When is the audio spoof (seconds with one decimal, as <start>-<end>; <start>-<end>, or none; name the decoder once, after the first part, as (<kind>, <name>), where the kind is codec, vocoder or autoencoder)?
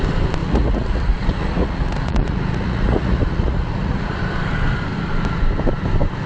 0.4-4.2 (vocoder, Vocos)